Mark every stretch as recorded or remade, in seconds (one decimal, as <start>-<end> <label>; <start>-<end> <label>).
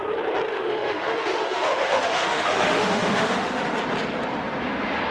0.0-0.5 recorded; 0.5-3.6 remade; 3.6-5.1 recorded